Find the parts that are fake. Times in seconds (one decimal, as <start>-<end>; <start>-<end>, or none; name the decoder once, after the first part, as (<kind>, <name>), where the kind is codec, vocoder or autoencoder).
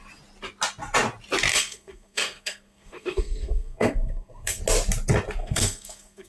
1.5-4.6 (codec, SNAC); 5.4-6.3